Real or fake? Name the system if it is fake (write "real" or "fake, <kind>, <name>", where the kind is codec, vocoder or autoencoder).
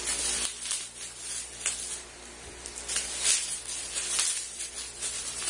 real